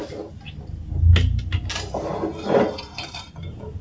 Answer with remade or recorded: recorded